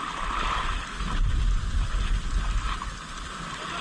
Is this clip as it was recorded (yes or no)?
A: yes